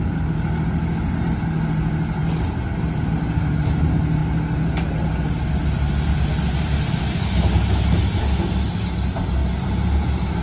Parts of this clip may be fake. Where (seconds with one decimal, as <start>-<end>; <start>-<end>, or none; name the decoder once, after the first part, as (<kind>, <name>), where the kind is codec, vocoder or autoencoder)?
none